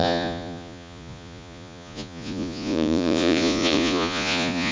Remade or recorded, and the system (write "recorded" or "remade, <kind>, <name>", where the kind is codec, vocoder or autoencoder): remade, vocoder, Vocos